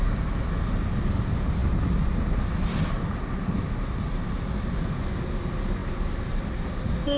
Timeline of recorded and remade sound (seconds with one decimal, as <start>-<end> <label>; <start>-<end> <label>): 0.0-7.2 recorded